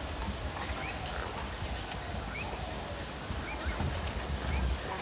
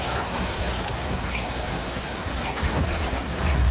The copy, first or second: second